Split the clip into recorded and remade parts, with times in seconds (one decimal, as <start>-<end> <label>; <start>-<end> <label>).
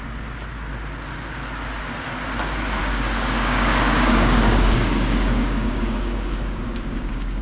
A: 0.0-2.8 recorded; 2.8-7.4 remade